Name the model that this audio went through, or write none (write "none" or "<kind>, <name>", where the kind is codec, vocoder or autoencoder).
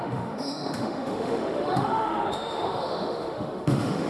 autoencoder, DAC-VAE